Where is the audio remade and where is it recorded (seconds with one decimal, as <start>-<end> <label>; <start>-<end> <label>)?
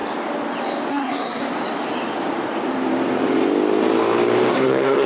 0.0-0.9 recorded; 0.9-1.4 remade; 1.4-4.5 recorded; 4.5-5.1 remade